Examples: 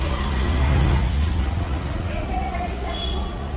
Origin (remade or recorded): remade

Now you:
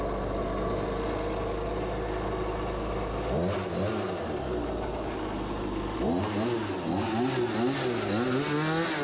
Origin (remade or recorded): recorded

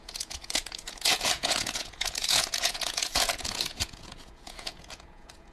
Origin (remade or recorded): remade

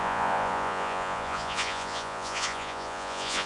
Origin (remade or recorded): remade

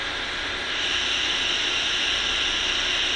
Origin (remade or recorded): recorded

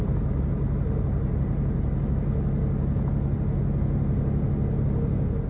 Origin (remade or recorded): recorded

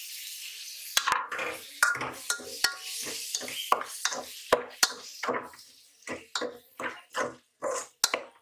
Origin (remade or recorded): recorded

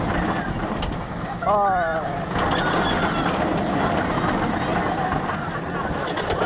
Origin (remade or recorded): recorded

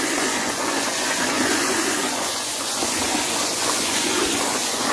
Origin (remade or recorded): remade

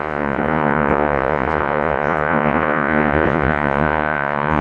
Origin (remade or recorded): remade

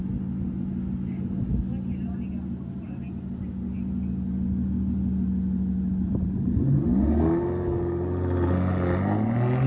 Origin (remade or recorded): recorded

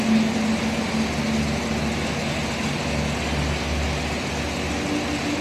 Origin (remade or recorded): recorded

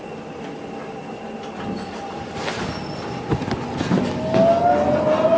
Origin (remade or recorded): recorded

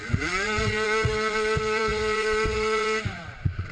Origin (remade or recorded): remade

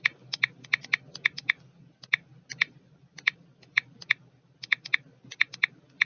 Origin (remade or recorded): recorded